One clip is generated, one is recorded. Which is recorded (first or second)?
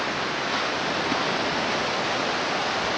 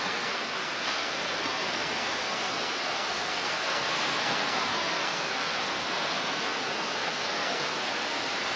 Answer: first